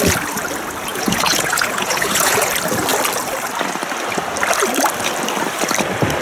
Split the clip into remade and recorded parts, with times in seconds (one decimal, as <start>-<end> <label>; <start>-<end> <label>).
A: 0.0-0.9 recorded; 0.9-2.5 remade; 2.5-6.2 recorded